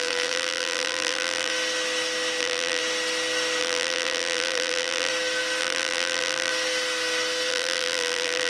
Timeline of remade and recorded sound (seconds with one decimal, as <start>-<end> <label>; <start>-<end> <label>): 0.0-1.5 remade; 1.5-2.4 recorded; 2.4-2.8 remade; 2.8-3.6 recorded; 3.6-5.1 remade; 5.1-5.6 recorded; 5.6-6.5 remade; 6.5-7.5 recorded; 7.5-8.5 remade